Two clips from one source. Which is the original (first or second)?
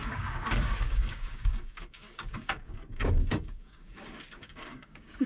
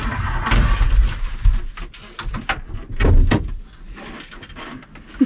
second